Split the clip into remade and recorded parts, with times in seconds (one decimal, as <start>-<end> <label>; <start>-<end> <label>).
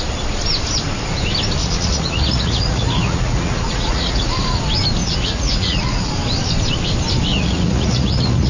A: 0.0-1.6 recorded; 1.6-4.6 remade; 4.6-5.0 recorded; 5.0-6.1 remade; 6.1-7.3 recorded; 7.3-8.5 remade